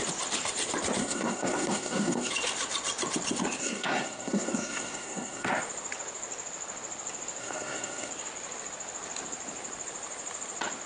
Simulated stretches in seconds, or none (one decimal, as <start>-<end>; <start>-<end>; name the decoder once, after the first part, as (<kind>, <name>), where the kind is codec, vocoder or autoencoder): 1.0-2.3 (codec, SNAC); 3.6-5.5; 7.4-8.1